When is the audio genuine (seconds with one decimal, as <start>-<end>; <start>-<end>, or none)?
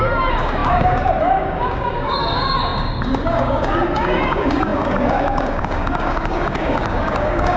none